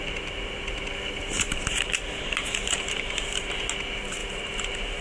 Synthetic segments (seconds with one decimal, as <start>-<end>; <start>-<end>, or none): 1.2-3.5; 4.2-5.0